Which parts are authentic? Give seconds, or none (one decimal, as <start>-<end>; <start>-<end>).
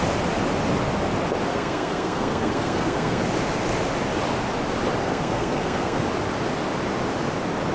0.0-1.5; 3.2-5.0; 6.0-7.7